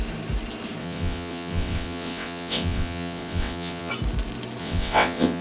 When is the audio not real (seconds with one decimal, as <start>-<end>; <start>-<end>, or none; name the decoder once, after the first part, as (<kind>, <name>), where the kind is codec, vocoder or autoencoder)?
0.8-3.9 (vocoder, WaveNeXt); 4.6-5.4